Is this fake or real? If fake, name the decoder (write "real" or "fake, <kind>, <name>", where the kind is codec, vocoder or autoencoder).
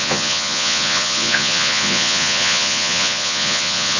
fake, vocoder, Vocos